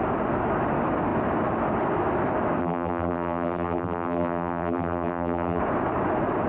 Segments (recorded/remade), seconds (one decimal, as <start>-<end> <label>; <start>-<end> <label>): 0.0-2.6 recorded; 2.6-5.6 remade; 5.6-6.5 recorded